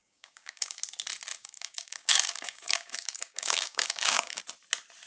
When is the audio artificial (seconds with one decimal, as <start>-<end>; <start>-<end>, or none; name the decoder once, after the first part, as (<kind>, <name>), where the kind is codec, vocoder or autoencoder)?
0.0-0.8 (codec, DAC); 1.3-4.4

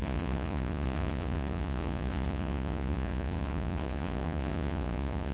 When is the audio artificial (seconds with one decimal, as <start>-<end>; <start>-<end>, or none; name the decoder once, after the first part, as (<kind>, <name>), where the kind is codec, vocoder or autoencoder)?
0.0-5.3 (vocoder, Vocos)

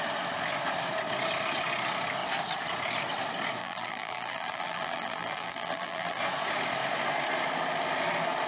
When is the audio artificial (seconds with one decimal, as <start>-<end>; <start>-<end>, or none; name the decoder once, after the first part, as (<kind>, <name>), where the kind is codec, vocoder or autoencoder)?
3.6-6.2 (vocoder, BigVGAN v2)

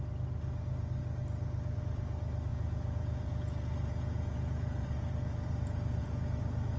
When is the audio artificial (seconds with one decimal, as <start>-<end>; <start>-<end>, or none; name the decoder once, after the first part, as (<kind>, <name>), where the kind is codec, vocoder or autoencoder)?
2.5-6.8 (vocoder, Vocos)

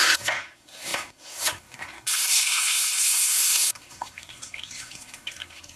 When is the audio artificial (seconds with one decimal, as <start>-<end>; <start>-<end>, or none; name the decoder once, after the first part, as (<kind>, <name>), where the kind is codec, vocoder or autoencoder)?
0.0-5.8 (codec, SNAC)

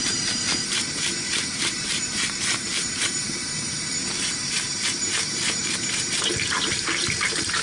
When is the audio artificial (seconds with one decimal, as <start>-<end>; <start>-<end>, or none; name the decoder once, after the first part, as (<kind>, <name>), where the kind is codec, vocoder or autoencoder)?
0.0-7.6 (vocoder, BigVGAN v2)

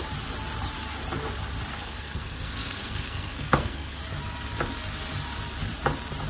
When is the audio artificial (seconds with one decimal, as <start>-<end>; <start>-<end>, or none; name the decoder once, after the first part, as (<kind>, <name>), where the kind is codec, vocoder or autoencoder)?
1.7-4.0 (codec, SNAC)

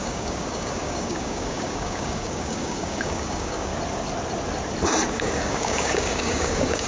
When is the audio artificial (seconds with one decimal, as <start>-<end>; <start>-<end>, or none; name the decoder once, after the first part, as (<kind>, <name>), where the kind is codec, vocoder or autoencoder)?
0.0-3.7 (codec, DAC); 5.1-6.9